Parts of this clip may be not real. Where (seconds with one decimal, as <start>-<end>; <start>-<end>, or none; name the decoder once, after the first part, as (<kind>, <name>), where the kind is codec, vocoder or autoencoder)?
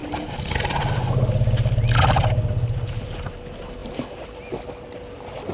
0.0-3.3 (vocoder, BigVGAN v2); 3.8-4.4